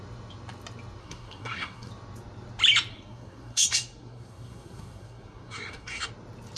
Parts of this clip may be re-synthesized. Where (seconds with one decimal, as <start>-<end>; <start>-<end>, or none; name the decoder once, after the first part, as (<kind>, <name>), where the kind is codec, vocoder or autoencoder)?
1.0-1.9 (codec, SNAC); 2.9-6.1